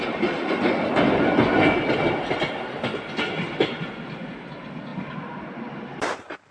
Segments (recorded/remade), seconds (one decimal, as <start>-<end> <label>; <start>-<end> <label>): 0.0-4.9 recorded; 4.9-6.5 remade